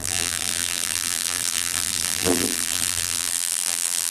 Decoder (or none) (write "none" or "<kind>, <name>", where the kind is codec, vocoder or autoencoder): vocoder, BigVGAN v2